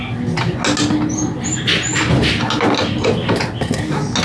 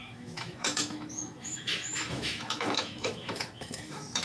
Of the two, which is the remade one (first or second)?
second